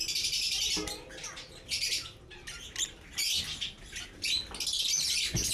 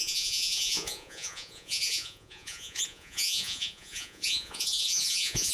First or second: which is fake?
second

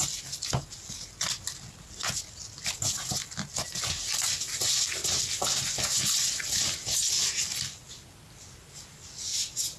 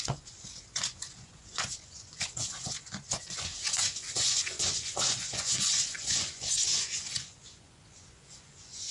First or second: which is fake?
second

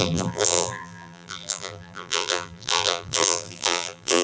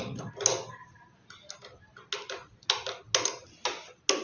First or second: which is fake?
first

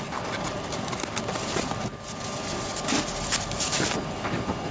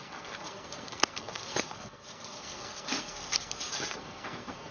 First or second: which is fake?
second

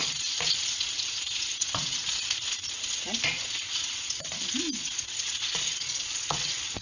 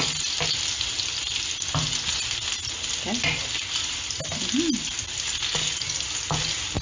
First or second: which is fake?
first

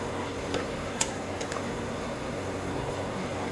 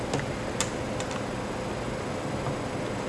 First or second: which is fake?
first